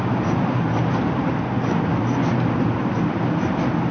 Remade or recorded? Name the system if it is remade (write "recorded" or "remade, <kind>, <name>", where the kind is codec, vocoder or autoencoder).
recorded